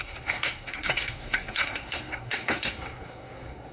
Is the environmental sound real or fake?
fake